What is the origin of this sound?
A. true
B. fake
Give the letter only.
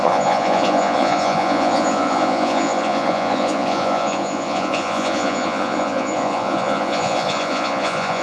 B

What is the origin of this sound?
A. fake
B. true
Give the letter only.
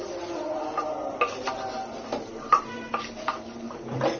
B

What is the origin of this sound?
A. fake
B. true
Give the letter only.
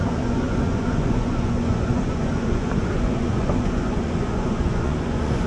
A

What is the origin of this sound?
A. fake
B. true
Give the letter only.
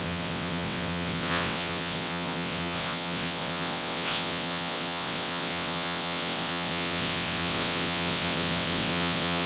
A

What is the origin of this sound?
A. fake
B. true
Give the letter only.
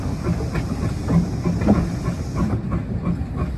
B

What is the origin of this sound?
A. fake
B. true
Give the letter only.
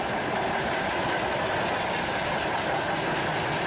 B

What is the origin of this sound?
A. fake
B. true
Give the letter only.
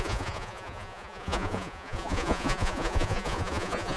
A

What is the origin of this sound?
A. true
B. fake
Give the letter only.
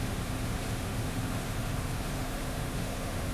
B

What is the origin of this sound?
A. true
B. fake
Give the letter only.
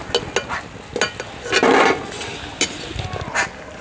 A